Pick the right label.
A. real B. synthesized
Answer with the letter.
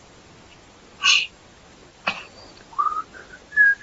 A